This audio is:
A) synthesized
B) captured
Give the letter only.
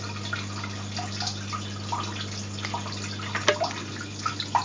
B